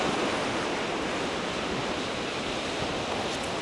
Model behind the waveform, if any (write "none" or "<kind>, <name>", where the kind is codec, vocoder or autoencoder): none